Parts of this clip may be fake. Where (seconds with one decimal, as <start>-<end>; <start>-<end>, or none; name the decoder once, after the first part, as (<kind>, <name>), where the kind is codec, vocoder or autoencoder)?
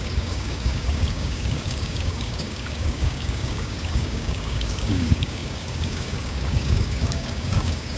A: 0.0-8.0 (codec, DAC)